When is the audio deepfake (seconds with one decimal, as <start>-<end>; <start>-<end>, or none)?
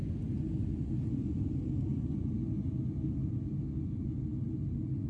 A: none